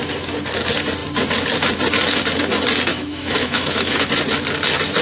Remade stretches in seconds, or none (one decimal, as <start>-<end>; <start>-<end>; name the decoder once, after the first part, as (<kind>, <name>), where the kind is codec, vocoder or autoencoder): 2.9-4.1 (autoencoder, DAC-VAE)